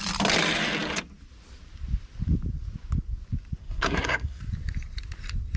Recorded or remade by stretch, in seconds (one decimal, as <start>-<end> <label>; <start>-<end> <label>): 0.0-3.6 recorded; 3.6-4.4 remade; 4.4-5.6 recorded